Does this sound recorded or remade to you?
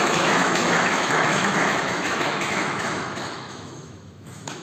remade